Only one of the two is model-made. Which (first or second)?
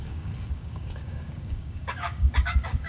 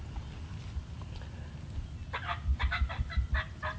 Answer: first